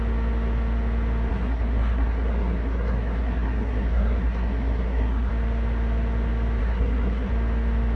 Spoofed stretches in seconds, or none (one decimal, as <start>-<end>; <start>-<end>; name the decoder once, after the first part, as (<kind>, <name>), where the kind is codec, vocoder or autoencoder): 1.3-5.3 (codec, SNAC); 6.6-7.3